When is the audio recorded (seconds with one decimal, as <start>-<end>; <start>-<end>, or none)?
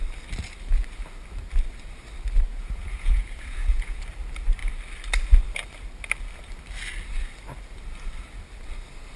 0.0-2.5; 4.0-9.2